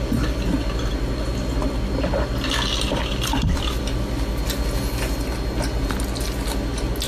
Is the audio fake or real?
real